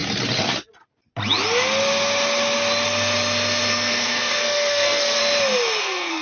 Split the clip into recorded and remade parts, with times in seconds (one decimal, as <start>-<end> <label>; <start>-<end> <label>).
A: 0.0-3.7 recorded; 3.7-5.2 remade; 5.2-5.8 recorded; 5.8-6.2 remade